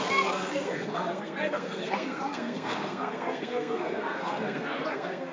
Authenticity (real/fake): fake